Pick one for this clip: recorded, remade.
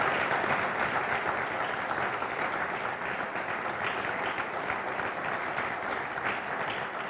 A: recorded